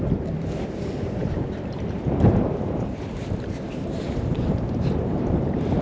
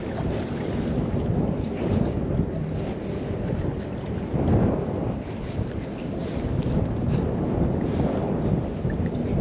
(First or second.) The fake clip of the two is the first